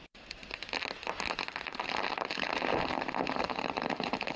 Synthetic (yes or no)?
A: yes